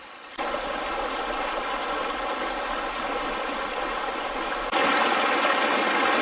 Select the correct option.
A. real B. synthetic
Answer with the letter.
A